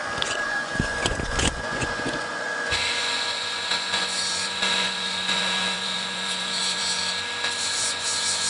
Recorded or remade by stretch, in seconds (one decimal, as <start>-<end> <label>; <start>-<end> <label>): 0.0-7.0 remade; 7.0-7.6 recorded; 7.6-8.5 remade